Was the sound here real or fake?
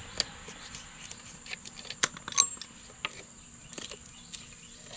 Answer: real